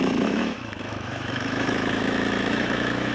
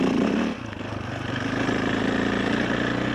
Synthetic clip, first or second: first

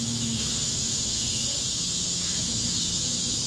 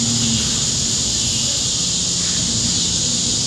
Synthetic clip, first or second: first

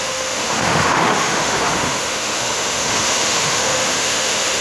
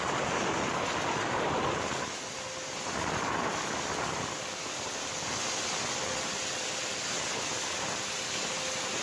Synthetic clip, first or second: first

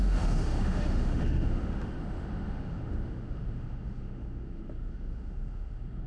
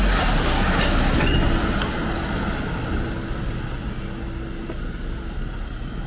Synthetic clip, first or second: first